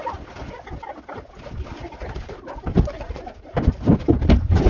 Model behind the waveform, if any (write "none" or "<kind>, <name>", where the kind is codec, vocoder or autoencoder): none